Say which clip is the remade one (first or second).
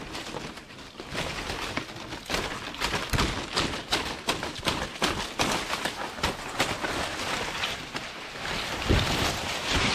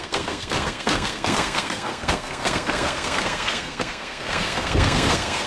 second